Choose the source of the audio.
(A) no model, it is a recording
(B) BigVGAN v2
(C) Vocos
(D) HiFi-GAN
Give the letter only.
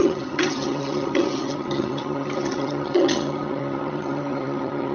D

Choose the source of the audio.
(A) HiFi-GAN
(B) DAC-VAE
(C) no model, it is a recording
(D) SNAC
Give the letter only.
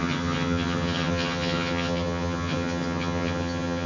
A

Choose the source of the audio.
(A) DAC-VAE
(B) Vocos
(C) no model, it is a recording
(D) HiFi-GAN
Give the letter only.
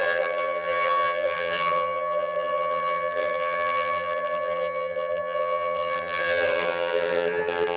D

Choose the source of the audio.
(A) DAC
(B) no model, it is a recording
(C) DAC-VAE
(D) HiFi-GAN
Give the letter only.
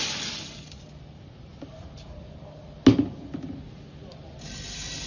B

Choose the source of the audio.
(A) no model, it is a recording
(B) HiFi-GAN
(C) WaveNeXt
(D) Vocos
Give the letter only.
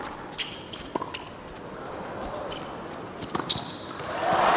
A